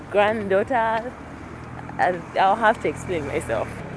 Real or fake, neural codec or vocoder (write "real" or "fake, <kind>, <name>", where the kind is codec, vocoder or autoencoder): real